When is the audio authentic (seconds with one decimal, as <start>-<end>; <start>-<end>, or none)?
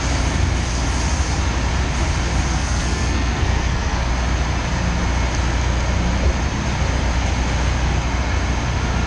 0.0-2.5; 4.1-9.1